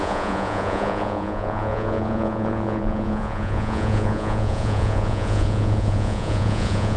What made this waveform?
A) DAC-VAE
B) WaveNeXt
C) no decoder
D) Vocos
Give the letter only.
D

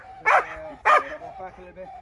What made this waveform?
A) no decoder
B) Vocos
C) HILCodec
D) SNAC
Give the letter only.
A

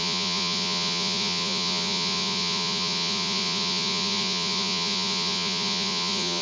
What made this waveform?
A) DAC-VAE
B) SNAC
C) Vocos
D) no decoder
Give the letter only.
C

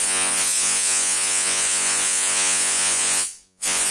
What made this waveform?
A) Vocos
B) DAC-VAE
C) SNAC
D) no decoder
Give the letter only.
A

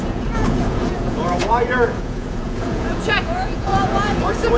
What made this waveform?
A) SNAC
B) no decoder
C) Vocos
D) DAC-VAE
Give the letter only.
C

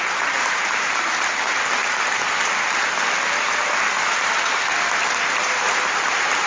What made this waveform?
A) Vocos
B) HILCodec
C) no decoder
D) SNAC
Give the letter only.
C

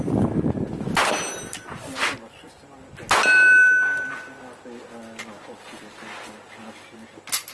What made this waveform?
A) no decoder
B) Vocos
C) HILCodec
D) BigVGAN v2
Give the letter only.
A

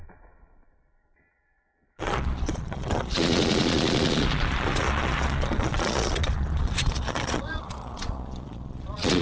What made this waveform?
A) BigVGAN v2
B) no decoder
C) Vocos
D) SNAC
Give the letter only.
C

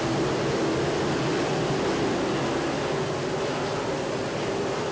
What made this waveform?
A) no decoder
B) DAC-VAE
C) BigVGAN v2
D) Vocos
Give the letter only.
A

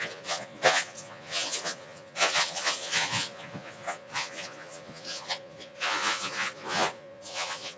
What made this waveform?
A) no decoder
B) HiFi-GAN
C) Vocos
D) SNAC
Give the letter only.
C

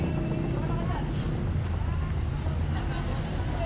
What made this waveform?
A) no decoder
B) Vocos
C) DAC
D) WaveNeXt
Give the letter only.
A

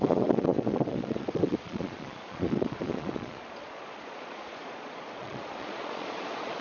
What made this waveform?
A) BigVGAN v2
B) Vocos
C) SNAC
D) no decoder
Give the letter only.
B